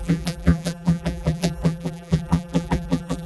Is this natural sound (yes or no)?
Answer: no